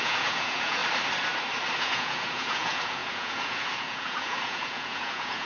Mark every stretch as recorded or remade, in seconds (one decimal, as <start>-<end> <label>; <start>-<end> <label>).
0.0-0.8 remade; 0.8-1.8 recorded; 1.8-5.5 remade